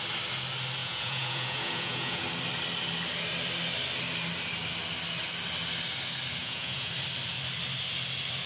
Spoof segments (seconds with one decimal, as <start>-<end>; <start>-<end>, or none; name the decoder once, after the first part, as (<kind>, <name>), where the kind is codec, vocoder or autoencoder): 0.8-2.2 (vocoder, Vocos); 6.4-6.9